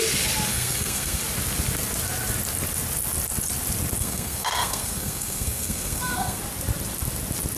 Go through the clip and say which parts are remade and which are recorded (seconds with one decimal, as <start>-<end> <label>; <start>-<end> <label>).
0.0-0.5 recorded; 0.5-1.2 remade; 1.2-4.0 recorded; 4.0-6.4 remade; 6.4-7.6 recorded